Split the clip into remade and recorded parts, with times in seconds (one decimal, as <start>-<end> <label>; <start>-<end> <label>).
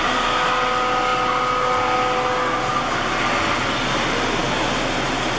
0.0-5.4 recorded